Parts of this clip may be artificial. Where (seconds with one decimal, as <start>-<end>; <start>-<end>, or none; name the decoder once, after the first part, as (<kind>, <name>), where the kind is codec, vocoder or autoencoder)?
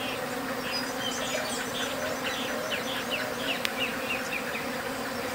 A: 1.3-4.2 (vocoder, BigVGAN v2)